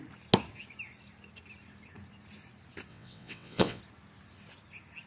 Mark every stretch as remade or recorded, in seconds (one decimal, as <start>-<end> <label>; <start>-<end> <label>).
0.0-2.9 recorded; 2.9-3.8 remade; 3.8-5.1 recorded